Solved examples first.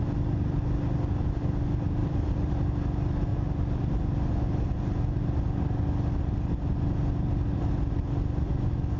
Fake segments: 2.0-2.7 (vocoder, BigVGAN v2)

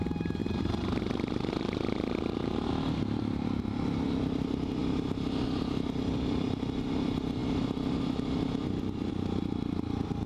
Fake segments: 0.4-2.7 (vocoder, BigVGAN v2)

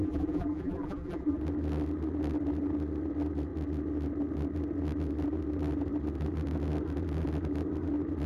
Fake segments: 0.0-1.4 (vocoder, BigVGAN v2)

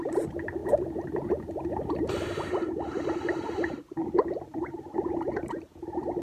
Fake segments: 0.0-6.2 (vocoder, BigVGAN v2)